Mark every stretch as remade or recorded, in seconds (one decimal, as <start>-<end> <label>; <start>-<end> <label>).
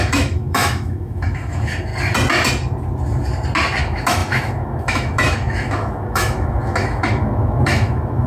0.0-1.9 remade; 1.9-3.8 recorded; 3.8-8.3 remade